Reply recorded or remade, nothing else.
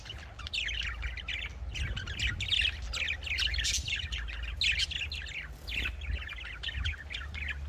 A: recorded